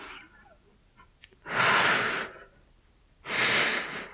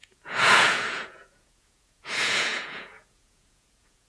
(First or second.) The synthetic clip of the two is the second